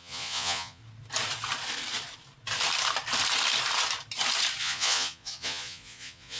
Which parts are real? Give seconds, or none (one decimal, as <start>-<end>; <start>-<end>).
0.8-4.6